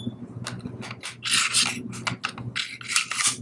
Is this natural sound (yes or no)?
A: yes